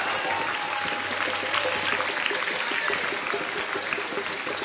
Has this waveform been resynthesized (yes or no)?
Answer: no